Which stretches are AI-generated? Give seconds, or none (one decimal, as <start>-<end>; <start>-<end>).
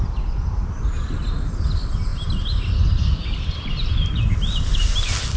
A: none